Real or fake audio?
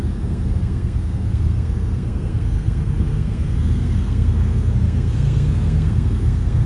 fake